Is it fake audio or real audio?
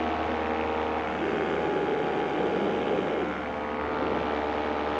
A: real